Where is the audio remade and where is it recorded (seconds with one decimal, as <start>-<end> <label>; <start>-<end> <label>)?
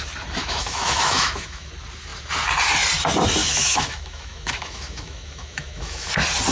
0.0-0.4 recorded; 0.4-1.7 remade; 1.7-3.4 recorded; 3.4-6.1 remade; 6.1-6.5 recorded